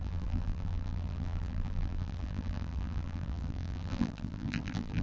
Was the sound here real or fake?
fake